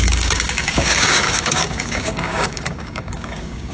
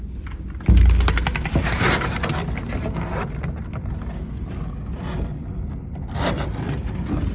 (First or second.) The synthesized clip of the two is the first